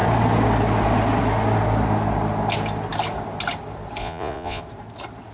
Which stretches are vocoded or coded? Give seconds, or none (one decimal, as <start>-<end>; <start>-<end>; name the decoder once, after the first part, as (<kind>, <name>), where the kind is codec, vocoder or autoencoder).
4.0-4.6 (vocoder, Vocos)